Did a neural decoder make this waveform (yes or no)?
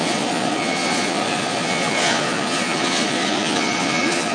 yes